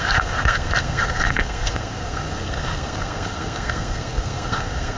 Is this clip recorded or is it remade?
remade